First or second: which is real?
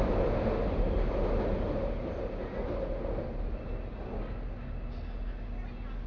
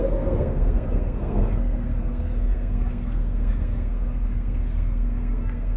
first